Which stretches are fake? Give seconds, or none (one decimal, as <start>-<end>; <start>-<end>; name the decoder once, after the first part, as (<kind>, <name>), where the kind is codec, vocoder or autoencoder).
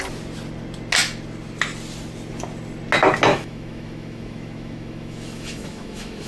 3.3-6.3 (autoencoder, DAC-VAE)